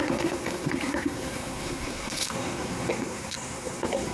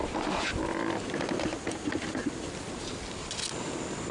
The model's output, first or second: first